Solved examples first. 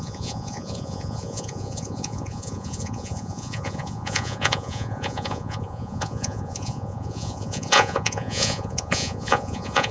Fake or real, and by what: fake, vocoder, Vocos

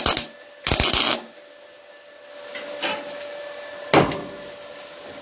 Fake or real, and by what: real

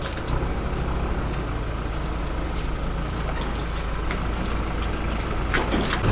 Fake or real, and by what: real